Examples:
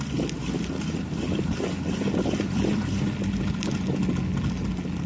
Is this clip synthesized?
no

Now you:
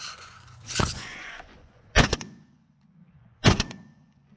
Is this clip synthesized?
yes